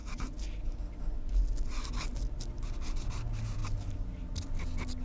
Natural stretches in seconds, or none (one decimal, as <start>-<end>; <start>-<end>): 0.0-5.0